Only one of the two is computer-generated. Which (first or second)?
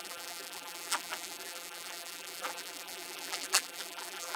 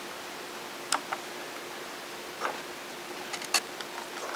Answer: first